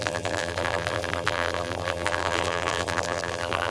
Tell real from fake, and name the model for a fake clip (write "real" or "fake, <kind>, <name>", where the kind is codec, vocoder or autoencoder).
fake, vocoder, BigVGAN v2